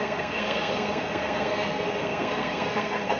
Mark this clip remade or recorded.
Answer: remade